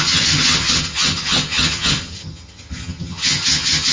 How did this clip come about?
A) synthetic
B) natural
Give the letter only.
A